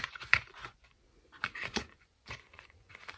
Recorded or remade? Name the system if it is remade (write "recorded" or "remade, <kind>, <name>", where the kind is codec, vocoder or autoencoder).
remade, vocoder, Vocos